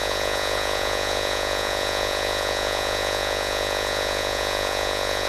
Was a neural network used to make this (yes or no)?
yes